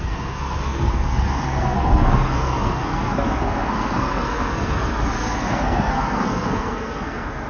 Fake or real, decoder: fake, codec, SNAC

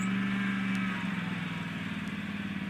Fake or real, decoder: real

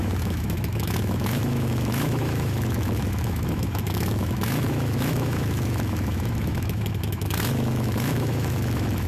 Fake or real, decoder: fake, autoencoder, DAC-VAE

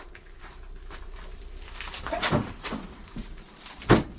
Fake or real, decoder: fake, vocoder, BigVGAN v2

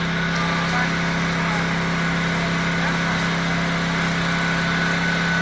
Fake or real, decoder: real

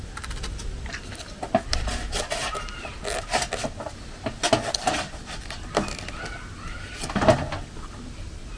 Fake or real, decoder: real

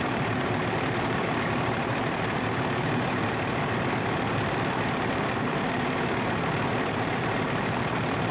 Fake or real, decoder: fake, vocoder, BigVGAN v2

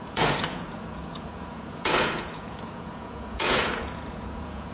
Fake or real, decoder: fake, vocoder, Vocos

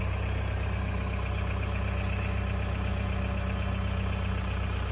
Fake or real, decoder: real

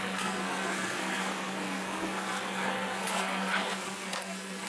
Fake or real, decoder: fake, codec, SNAC